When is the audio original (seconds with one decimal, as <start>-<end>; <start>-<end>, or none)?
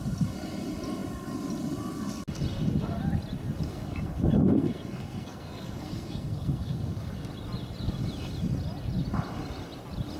0.0-3.7; 7.3-10.2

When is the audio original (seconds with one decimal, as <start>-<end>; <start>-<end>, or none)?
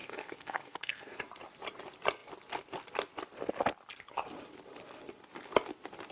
1.2-6.1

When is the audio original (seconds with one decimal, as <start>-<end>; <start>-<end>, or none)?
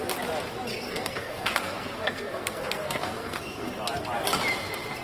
0.0-0.7; 3.7-5.0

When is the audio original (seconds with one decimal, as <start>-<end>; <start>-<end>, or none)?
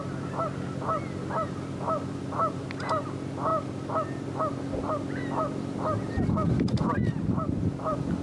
0.0-8.2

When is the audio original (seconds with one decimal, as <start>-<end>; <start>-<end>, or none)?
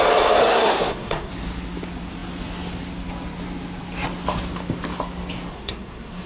0.0-0.4; 1.3-5.5